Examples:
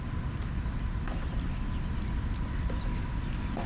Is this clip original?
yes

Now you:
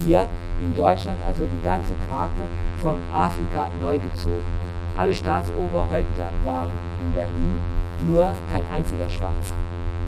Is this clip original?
no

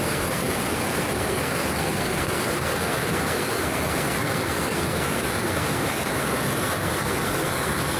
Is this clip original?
no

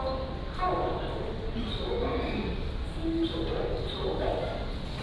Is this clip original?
yes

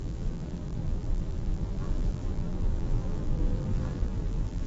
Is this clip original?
no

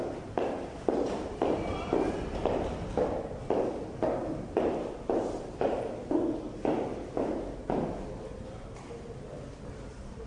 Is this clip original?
yes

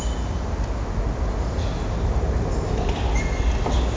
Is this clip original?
yes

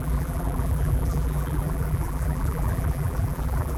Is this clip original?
no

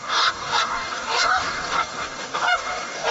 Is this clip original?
no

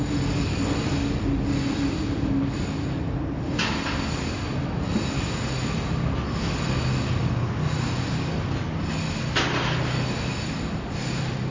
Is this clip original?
yes